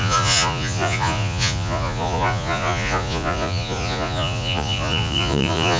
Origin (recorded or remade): remade